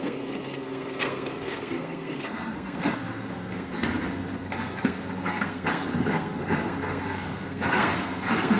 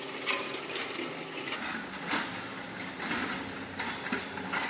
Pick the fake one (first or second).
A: first